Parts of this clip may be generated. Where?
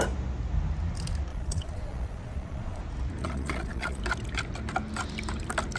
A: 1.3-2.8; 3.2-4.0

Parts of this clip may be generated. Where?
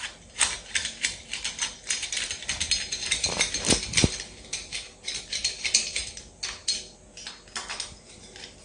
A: none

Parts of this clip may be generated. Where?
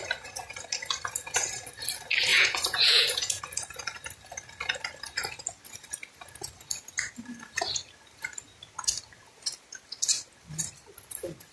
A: 2.3-3.4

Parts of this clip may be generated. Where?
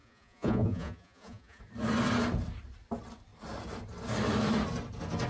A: 0.0-1.6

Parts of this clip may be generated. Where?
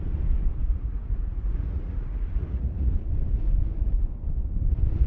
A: 0.6-2.9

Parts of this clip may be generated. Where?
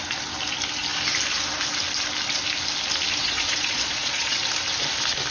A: 3.2-4.4